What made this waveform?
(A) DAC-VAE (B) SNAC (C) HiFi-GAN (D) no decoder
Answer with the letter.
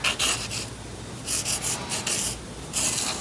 D